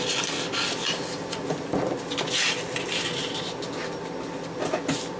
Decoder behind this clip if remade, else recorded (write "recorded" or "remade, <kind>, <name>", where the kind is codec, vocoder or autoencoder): recorded